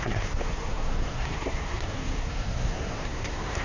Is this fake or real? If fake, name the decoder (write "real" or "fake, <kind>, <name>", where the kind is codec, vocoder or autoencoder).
fake, codec, SNAC